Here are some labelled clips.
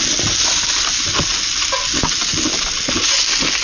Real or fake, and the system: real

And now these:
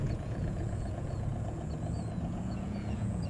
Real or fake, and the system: fake, vocoder, Vocos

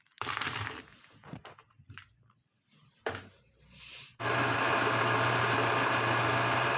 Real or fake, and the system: fake, vocoder, BigVGAN v2